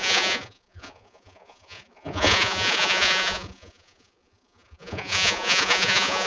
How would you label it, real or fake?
fake